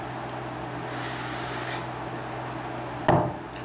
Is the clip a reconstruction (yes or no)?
no